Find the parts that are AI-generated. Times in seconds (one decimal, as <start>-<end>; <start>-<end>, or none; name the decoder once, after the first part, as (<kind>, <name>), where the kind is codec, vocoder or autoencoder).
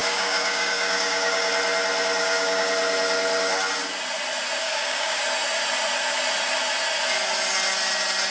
0.0-1.5 (codec, DAC); 2.2-2.7; 4.6-5.2